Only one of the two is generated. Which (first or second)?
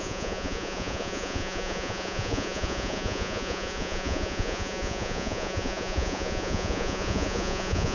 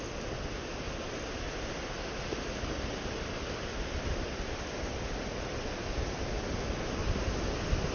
first